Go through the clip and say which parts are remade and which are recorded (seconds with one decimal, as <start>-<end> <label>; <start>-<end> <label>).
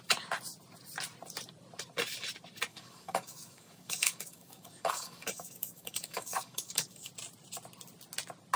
0.0-2.7 recorded; 2.7-7.1 remade; 7.1-8.6 recorded